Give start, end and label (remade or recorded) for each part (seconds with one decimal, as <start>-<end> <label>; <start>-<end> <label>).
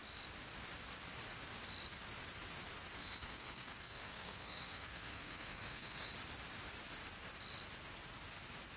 0.0-3.0 recorded; 3.0-6.1 remade; 6.1-8.8 recorded